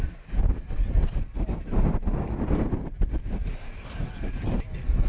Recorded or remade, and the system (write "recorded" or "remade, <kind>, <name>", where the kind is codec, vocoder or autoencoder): recorded